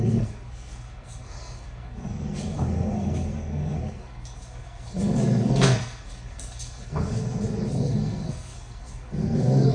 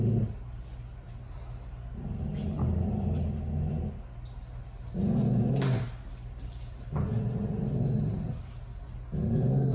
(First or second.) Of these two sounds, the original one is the second